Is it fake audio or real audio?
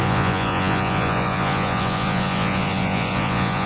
fake